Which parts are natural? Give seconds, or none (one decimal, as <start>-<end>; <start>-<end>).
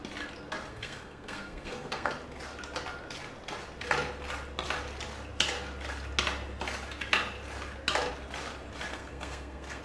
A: 0.0-0.7; 2.1-8.9